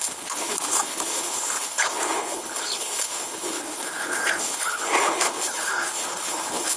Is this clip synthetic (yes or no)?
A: yes